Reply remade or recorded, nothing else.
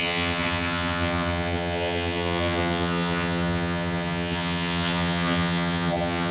remade